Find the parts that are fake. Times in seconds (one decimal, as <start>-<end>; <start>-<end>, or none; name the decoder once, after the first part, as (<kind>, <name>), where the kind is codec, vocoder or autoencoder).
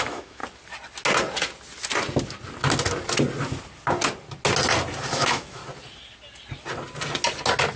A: 0.0-0.4 (autoencoder, DAC-VAE); 5.1-5.6